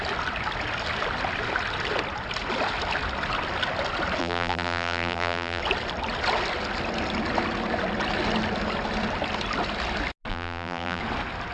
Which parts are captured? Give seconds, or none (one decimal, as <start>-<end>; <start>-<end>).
0.0-4.2; 5.6-10.3; 11.0-11.5